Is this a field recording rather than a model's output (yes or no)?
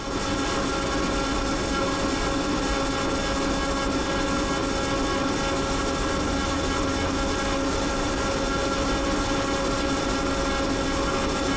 yes